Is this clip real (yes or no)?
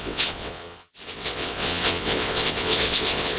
no